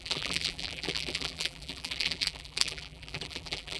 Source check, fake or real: fake